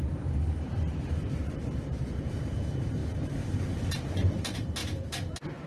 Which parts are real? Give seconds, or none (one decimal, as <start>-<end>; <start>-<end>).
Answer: 4.8-5.7